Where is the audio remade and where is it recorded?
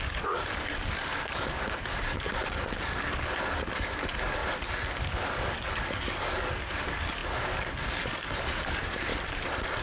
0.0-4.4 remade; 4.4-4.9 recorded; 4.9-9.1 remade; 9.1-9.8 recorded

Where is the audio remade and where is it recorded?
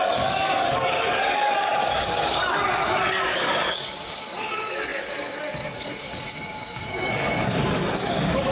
0.0-8.5 remade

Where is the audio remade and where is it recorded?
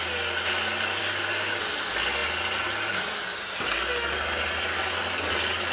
0.0-1.0 recorded; 1.0-1.6 remade; 1.6-5.7 recorded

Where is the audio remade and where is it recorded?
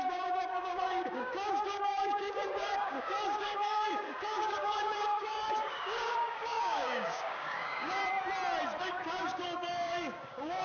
0.0-8.0 remade; 8.0-8.8 recorded; 8.8-10.6 remade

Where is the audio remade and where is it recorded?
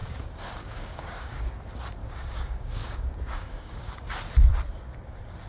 0.0-1.5 remade; 1.5-2.0 recorded; 2.0-4.1 remade; 4.1-5.5 recorded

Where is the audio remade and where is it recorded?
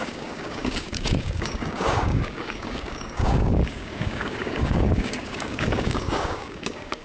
0.0-7.0 remade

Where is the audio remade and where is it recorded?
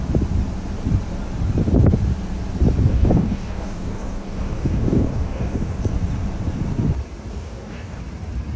0.0-2.9 recorded; 2.9-5.8 remade; 5.8-7.3 recorded; 7.3-8.0 remade; 8.0-8.6 recorded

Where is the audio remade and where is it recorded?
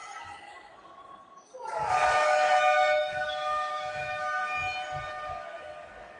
0.0-4.4 remade; 4.4-5.1 recorded; 5.1-6.2 remade